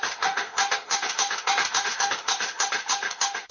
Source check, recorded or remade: remade